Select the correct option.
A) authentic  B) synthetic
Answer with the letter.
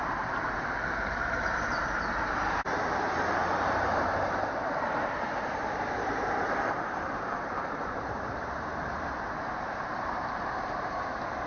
B